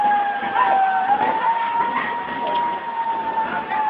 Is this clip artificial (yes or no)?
no